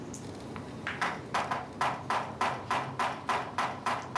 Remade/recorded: recorded